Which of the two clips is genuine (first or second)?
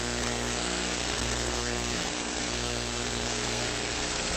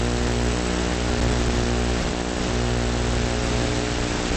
second